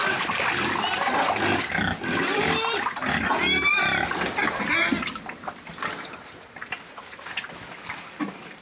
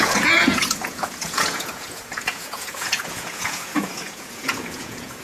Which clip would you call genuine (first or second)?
first